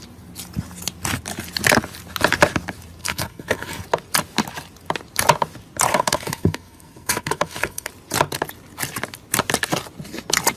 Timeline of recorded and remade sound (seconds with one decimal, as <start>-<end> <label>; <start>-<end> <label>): 0.0-3.0 recorded; 3.0-3.8 remade; 3.8-5.9 recorded; 5.9-7.9 remade; 7.9-10.6 recorded